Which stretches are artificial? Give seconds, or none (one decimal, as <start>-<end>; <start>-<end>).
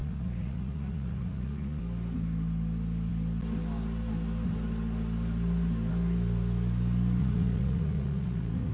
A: 0.0-1.8; 7.2-8.7